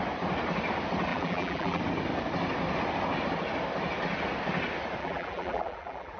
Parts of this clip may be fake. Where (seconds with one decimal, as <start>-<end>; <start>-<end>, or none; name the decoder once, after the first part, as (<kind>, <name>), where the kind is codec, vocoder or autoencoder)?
1.1-1.8 (vocoder, BigVGAN v2); 5.0-6.2